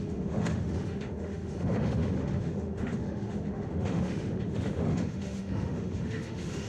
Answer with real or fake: fake